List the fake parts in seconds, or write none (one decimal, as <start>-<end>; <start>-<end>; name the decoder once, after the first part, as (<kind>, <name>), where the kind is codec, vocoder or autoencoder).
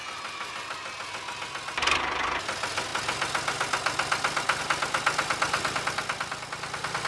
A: none